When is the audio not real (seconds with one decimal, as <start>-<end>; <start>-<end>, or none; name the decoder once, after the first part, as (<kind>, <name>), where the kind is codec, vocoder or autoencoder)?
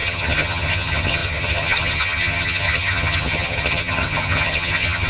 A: 0.0-5.1 (vocoder, HiFi-GAN)